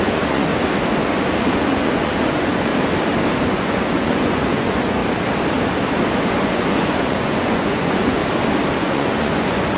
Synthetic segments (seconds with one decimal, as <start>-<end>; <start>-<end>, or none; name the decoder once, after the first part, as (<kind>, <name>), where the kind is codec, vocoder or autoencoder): 0.0-0.5 (vocoder, Vocos); 1.4-2.7; 3.4-5.0; 6.4-8.2; 8.8-9.8